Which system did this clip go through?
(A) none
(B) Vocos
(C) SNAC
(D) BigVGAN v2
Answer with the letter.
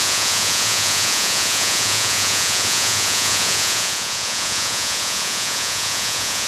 B